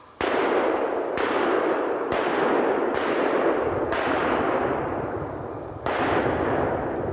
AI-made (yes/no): no